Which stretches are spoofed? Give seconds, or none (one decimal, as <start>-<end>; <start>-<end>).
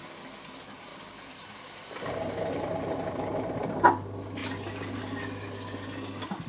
0.9-3.8